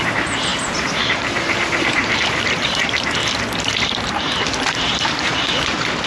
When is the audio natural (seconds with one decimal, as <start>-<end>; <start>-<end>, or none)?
3.2-4.0